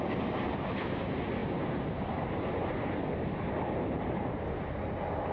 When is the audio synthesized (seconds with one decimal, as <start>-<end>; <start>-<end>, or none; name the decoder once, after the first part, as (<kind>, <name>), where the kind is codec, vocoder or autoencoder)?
none